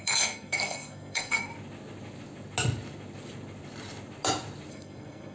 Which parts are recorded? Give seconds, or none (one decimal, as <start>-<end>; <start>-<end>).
1.5-4.7